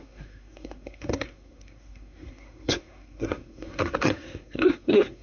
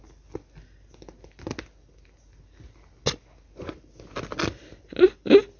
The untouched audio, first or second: second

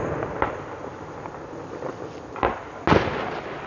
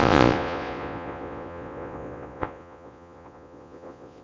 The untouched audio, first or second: first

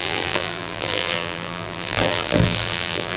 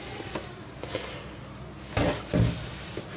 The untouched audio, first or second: second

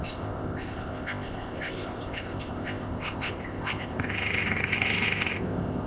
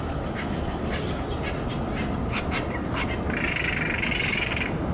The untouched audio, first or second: second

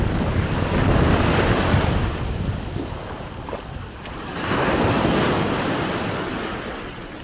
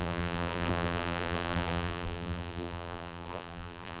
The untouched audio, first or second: first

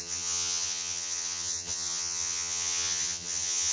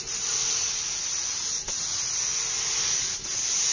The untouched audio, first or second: second